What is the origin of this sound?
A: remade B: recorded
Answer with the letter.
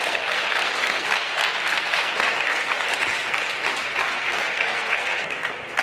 A